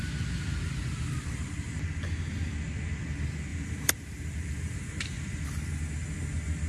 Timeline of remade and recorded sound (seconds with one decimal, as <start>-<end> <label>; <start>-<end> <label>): 0.0-3.5 recorded; 3.5-5.8 remade; 5.8-6.7 recorded

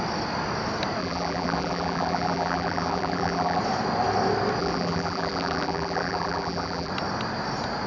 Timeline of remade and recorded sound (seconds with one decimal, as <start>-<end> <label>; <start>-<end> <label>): 0.0-1.0 recorded; 1.0-3.6 remade; 3.6-4.6 recorded; 4.6-6.9 remade; 6.9-7.9 recorded

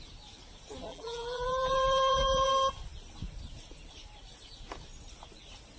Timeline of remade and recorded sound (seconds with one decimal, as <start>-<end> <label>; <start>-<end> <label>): 0.0-0.9 recorded; 0.9-2.5 remade; 2.5-5.8 recorded